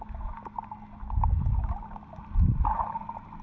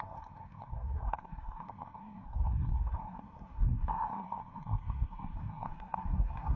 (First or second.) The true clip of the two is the first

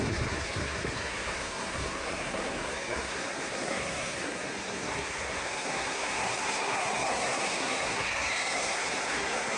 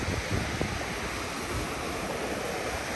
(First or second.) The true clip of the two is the second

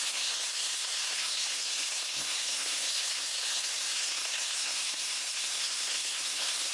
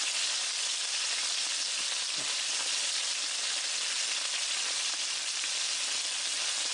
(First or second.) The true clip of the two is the second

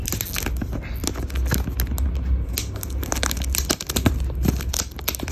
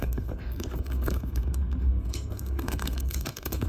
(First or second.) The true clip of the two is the first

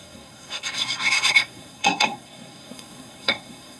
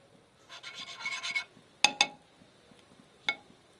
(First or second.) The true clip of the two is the second